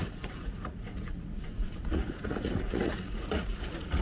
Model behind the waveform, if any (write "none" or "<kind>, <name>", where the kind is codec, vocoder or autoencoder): vocoder, Vocos